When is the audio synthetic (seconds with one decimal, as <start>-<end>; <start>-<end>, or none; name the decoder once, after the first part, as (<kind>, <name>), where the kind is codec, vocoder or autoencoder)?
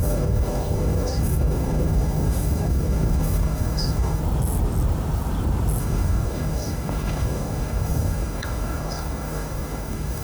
0.0-4.2 (codec, DAC); 5.8-10.2